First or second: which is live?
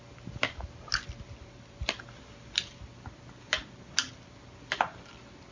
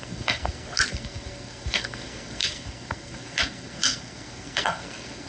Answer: first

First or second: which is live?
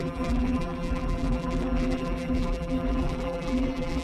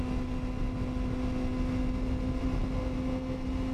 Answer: second